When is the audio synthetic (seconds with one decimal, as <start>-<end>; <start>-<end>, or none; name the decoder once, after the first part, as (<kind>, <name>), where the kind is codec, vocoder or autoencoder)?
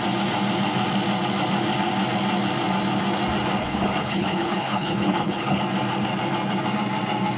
3.6-5.6 (codec, HILCodec)